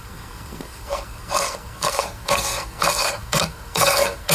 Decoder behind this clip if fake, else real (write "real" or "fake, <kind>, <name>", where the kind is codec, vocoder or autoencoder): fake, codec, SNAC